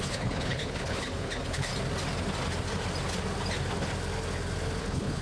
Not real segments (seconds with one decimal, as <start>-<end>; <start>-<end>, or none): 0.0-1.7; 4.8-5.2

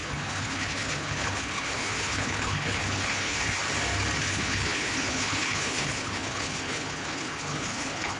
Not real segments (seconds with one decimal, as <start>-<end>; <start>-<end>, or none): 0.0-3.6; 4.2-8.2

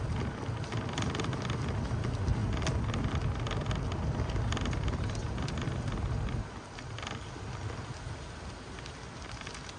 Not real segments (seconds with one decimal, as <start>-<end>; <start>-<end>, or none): none

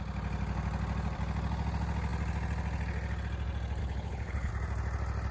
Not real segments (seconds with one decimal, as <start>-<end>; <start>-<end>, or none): 3.8-4.5

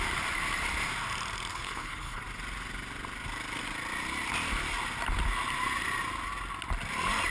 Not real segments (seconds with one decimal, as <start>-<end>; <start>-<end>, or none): 1.5-2.2